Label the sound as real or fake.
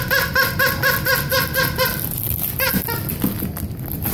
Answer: real